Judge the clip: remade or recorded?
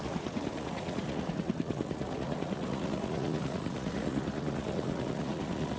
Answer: remade